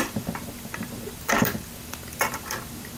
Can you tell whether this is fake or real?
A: fake